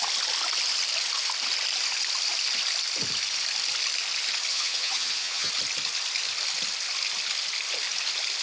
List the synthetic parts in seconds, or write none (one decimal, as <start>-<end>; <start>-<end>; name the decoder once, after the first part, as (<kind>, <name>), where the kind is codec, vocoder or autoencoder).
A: 4.5-5.5 (vocoder, HiFi-GAN)